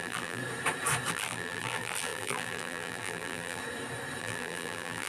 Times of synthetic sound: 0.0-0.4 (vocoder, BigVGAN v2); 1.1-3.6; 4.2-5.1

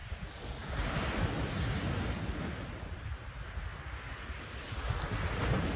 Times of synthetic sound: none

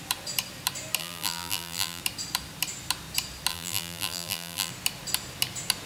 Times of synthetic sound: 1.0-2.0 (vocoder, BigVGAN v2); 3.5-4.7